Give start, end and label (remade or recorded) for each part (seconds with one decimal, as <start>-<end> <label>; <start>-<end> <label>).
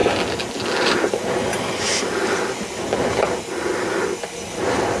0.0-5.0 recorded